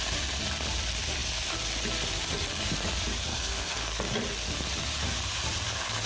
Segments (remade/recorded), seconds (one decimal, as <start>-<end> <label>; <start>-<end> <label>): 0.0-3.3 recorded; 3.3-4.0 remade; 4.0-6.1 recorded